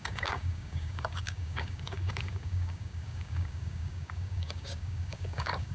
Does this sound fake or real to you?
fake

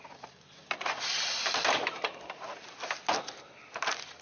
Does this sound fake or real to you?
real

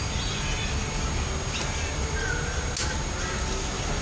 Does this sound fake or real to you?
real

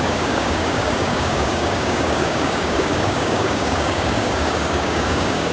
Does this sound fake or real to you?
fake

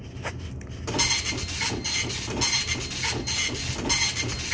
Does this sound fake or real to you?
real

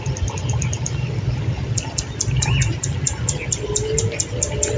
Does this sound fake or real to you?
real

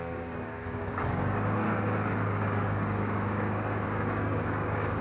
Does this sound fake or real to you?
fake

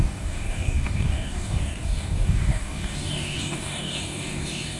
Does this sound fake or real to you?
fake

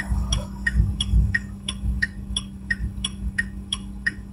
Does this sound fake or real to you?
fake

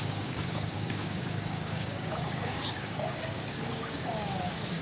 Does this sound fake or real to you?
fake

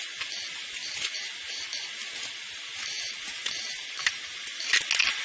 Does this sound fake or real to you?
real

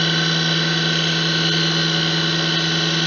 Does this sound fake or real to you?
real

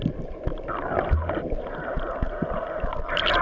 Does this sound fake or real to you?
real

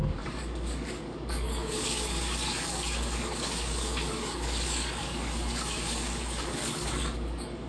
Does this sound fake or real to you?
fake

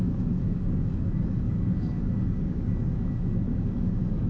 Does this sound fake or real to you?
fake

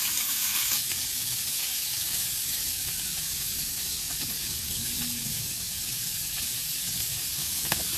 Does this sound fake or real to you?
fake